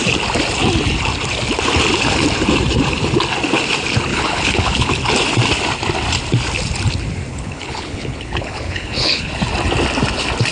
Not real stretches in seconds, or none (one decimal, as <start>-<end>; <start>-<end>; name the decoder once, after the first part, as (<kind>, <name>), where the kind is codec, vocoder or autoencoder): 4.1-4.9 (codec, HILCodec); 7.3-9.3